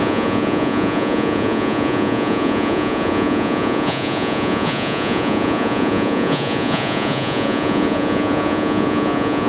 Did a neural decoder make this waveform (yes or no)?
yes